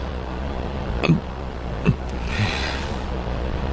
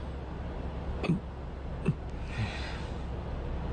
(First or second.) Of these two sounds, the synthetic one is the first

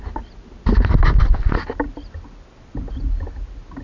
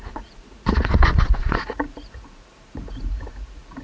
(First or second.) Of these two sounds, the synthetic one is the second